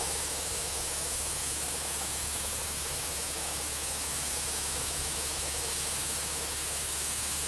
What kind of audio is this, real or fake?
fake